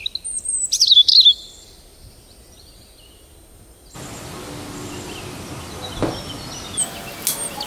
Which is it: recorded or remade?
recorded